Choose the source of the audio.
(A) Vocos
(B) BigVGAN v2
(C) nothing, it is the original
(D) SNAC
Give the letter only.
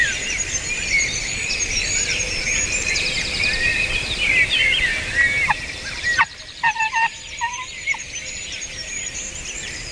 B